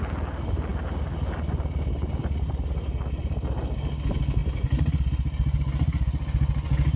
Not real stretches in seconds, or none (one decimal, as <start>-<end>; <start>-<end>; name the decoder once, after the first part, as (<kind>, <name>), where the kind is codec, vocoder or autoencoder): none